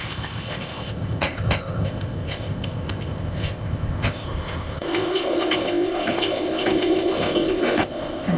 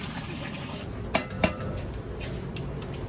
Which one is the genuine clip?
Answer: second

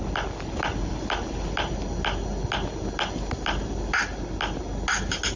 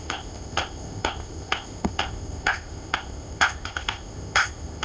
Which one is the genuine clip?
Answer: first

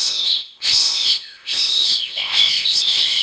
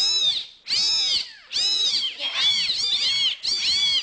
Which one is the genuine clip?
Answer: second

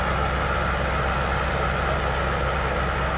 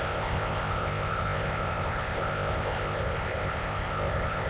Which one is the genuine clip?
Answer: first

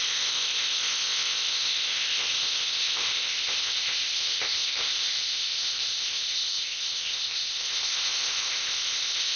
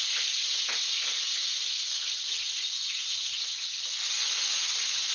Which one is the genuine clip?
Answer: second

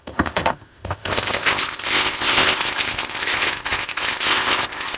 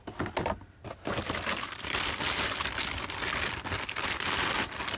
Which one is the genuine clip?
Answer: second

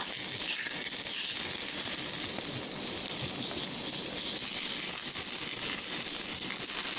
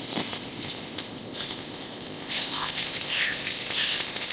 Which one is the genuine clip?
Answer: first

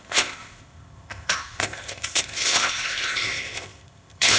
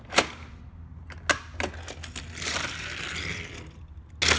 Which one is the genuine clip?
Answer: second